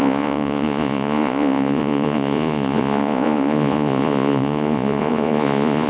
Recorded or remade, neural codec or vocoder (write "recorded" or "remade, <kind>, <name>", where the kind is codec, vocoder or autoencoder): remade, vocoder, Vocos